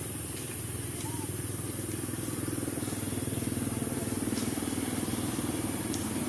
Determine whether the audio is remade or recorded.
recorded